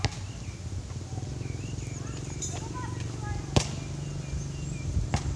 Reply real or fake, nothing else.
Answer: real